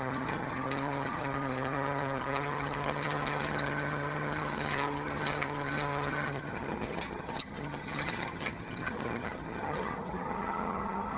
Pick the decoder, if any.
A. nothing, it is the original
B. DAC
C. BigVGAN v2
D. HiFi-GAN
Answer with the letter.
D